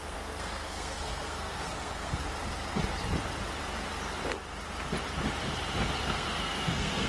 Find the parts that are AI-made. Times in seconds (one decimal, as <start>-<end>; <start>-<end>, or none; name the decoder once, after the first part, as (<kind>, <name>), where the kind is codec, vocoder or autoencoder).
0.0-2.2 (codec, SNAC); 6.0-7.1

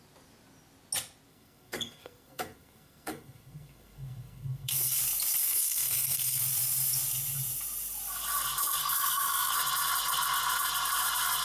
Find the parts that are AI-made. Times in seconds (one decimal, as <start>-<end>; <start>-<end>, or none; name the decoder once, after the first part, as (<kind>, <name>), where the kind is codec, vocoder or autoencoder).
1.3-5.0 (codec, SNAC); 5.4-6.4; 8.8-9.5

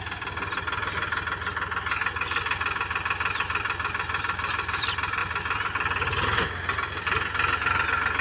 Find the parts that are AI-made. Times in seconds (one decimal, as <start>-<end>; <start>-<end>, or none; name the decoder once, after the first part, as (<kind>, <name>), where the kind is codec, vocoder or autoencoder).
none

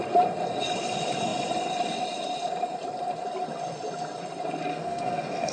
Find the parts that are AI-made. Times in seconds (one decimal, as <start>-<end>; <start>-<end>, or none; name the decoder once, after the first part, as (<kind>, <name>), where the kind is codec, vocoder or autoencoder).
4.7-5.5 (codec, SNAC)

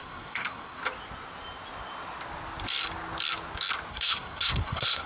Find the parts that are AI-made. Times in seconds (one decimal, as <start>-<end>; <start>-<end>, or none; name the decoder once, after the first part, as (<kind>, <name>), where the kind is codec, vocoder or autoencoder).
0.0-0.8 (codec, SNAC); 3.9-5.1

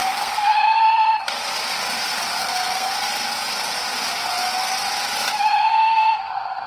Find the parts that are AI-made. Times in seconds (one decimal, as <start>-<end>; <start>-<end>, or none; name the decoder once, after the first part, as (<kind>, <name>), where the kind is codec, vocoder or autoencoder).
0.0-0.8 (codec, SNAC); 2.4-2.9; 5.7-6.7

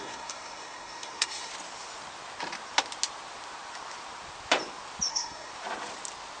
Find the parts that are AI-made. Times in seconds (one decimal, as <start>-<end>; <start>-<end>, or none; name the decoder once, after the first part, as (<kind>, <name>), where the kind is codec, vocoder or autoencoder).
0.0-1.5 (codec, SNAC); 5.1-5.5

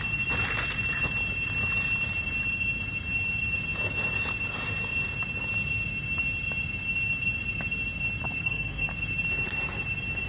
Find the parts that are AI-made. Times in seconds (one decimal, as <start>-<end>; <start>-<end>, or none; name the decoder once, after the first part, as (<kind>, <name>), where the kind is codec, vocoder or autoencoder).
8.4-8.9 (codec, SNAC)